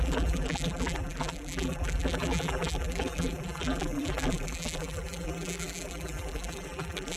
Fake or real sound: fake